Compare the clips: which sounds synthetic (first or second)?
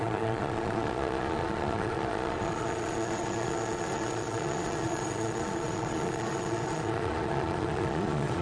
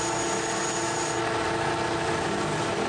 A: first